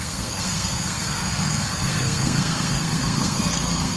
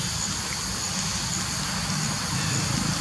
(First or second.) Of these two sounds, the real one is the second